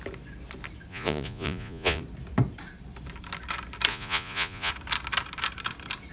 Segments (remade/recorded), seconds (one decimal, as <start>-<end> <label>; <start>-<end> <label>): 0.0-0.9 recorded; 0.9-2.0 remade; 2.0-3.9 recorded; 3.9-4.7 remade; 4.7-6.1 recorded